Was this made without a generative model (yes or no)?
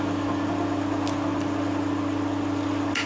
yes